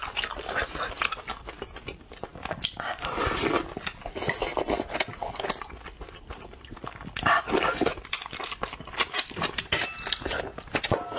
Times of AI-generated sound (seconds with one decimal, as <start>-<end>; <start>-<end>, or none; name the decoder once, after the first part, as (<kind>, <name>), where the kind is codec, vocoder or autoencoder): none